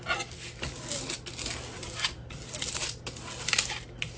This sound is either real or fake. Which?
real